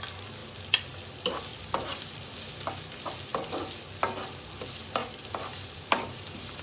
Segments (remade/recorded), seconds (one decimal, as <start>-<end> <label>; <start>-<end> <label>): 0.0-1.5 recorded; 1.5-2.4 remade; 2.4-5.0 recorded; 5.0-6.6 remade